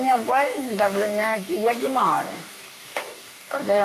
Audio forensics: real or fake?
fake